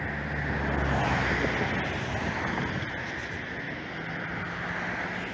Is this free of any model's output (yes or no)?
yes